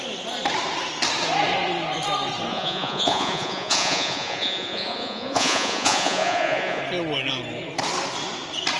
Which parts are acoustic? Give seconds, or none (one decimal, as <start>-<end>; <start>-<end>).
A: 0.0-2.5; 6.8-8.8